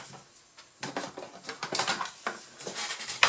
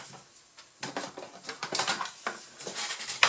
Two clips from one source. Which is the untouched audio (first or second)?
first